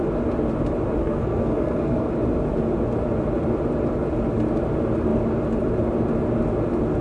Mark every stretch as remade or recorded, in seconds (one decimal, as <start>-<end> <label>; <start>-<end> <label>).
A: 0.0-1.0 recorded; 1.0-2.1 remade; 2.1-7.0 recorded